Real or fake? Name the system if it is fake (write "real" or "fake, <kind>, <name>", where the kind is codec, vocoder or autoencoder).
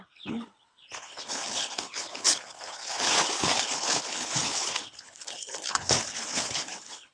fake, codec, HILCodec